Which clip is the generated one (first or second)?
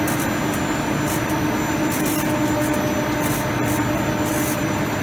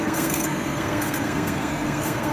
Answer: second